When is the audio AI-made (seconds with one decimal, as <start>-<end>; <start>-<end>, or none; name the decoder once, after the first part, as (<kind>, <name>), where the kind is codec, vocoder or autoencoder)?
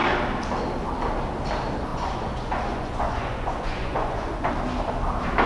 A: 1.9-4.5 (vocoder, Vocos)